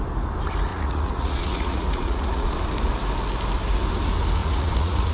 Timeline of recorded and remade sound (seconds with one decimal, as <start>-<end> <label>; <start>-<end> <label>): 0.0-0.7 recorded; 0.7-2.5 remade; 2.5-4.4 recorded; 4.4-5.1 remade